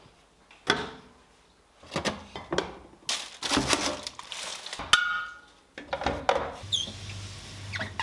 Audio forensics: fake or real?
real